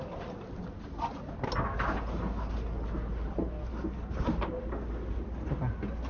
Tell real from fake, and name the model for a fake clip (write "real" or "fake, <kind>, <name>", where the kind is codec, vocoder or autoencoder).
real